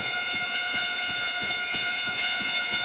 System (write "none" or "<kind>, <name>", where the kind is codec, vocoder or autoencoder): vocoder, Vocos